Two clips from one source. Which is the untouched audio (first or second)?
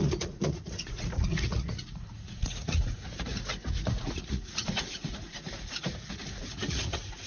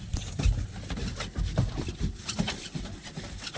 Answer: second